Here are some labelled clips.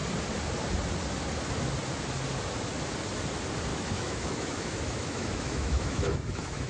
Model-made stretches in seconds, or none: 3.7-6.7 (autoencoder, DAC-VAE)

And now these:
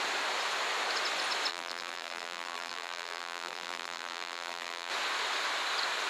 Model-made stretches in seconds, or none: 1.5-4.9 (vocoder, BigVGAN v2)

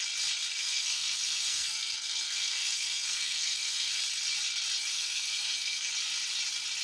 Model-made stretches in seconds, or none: 0.5-4.0 (codec, SNAC); 4.9-5.9

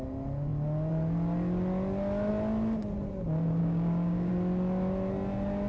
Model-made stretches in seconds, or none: 3.6-4.3 (codec, DAC)

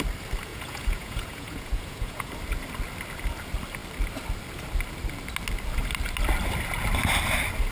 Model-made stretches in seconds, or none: 0.5-2.3 (vocoder, Vocos)

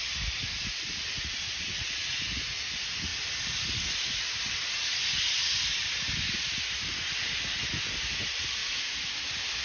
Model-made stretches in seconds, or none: none